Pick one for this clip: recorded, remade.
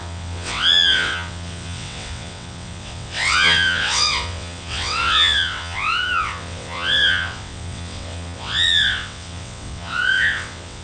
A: remade